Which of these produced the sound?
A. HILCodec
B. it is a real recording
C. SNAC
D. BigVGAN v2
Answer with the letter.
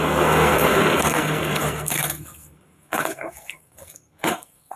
C